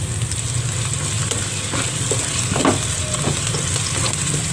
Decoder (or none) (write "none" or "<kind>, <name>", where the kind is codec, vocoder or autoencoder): none